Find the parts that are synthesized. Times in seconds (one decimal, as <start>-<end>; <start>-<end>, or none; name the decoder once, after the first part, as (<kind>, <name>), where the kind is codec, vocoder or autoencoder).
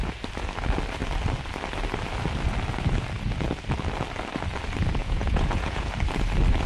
5.0-5.9 (vocoder, Vocos)